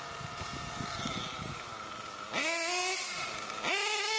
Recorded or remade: recorded